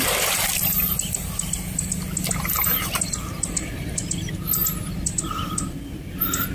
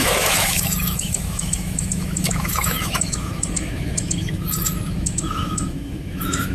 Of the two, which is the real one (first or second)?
first